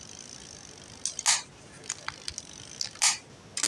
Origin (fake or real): real